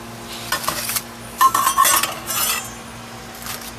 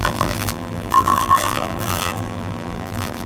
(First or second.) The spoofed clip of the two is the second